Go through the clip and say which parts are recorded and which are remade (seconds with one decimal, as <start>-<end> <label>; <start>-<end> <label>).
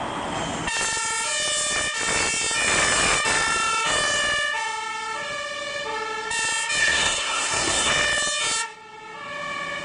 0.0-6.8 recorded; 6.8-7.9 remade; 7.9-9.8 recorded